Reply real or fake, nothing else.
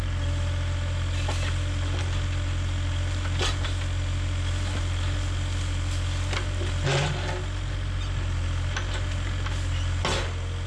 real